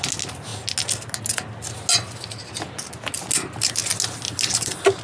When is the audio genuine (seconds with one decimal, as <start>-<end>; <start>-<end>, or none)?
0.0-5.0